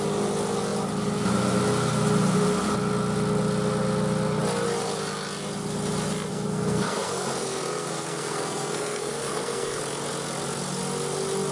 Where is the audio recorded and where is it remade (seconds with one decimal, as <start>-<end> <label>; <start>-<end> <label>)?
0.0-6.3 recorded; 6.3-9.8 remade; 9.8-11.5 recorded